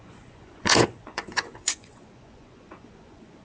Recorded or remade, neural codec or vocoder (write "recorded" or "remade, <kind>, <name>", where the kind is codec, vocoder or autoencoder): remade, vocoder, Vocos